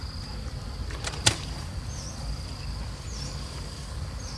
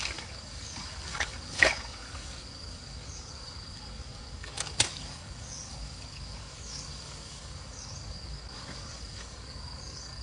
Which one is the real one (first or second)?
first